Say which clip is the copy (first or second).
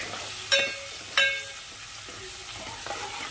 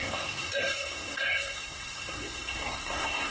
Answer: second